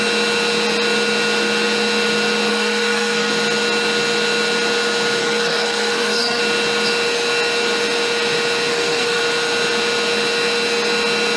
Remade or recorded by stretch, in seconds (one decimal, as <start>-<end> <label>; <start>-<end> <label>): 0.0-2.5 recorded; 2.5-3.3 remade; 3.3-5.2 recorded; 5.2-6.4 remade; 6.4-8.7 recorded; 8.7-9.2 remade; 9.2-11.4 recorded